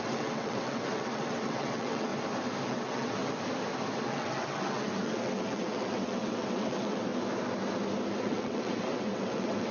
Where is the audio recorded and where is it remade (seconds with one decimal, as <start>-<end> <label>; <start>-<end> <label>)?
0.0-2.1 remade; 2.1-2.7 recorded; 2.7-3.2 remade; 3.2-4.0 recorded; 4.0-7.1 remade; 7.1-8.2 recorded; 8.2-9.7 remade